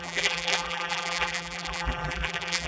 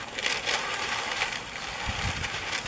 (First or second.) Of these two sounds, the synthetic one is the first